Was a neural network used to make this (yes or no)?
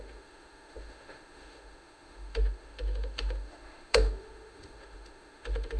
yes